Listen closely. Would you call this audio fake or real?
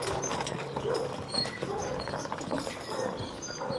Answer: fake